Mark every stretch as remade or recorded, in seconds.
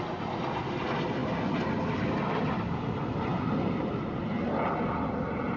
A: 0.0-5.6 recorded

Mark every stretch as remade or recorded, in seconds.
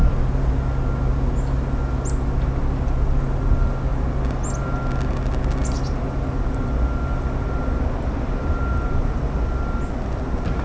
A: 0.0-10.6 recorded